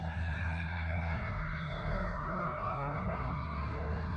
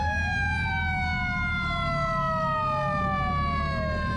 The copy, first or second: first